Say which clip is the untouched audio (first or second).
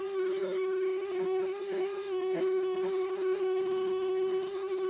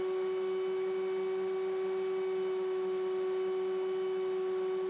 second